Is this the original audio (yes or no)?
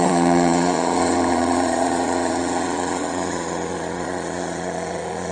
no